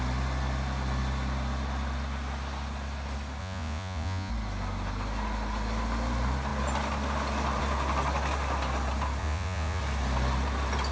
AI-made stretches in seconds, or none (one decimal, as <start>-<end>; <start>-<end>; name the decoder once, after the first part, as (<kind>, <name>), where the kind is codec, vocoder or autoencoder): 3.4-4.3 (vocoder, Vocos); 9.2-9.8